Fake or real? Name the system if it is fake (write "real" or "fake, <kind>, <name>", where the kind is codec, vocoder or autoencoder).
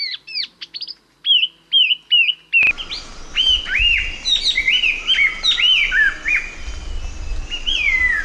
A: real